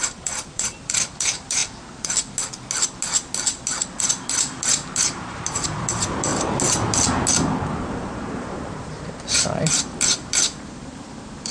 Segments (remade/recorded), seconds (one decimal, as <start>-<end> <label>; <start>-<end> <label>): 0.0-1.6 remade; 1.6-4.0 recorded; 4.0-6.3 remade; 6.3-7.8 recorded; 7.8-11.5 remade